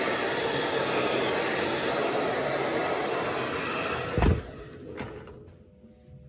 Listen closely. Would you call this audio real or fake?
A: real